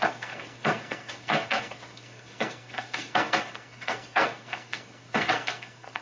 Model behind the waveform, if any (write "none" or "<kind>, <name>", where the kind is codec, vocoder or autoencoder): codec, SNAC